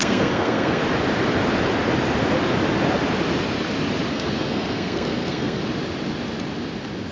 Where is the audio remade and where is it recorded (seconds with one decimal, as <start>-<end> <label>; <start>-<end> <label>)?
0.0-0.8 remade; 0.8-4.1 recorded; 4.1-5.6 remade; 5.6-7.1 recorded